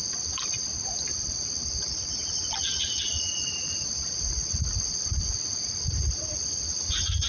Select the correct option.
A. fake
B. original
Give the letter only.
B